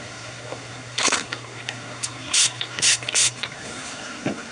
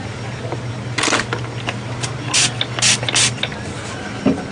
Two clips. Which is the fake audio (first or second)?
first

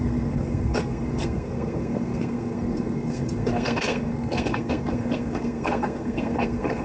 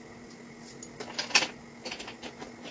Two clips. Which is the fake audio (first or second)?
first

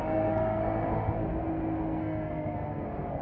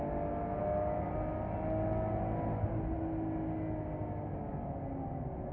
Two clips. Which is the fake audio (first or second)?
first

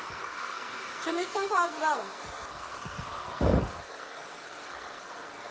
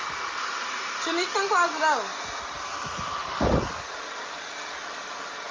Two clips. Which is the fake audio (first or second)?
first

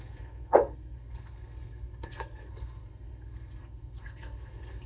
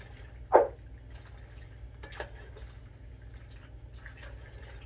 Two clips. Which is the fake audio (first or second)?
first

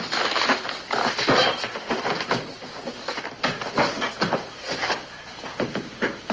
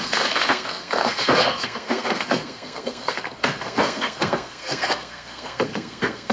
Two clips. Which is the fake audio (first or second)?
second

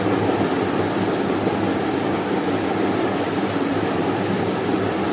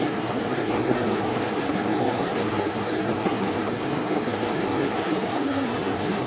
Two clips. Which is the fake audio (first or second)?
second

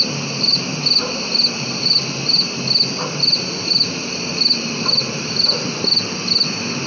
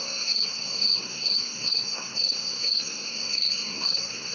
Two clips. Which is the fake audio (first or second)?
second